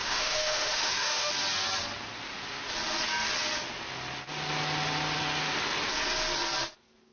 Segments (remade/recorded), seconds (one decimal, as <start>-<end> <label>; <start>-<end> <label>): 0.0-1.3 remade; 1.3-7.1 recorded